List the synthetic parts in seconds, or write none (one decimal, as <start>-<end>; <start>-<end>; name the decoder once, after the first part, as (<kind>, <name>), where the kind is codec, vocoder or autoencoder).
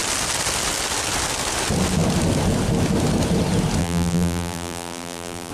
3.8-5.5 (vocoder, BigVGAN v2)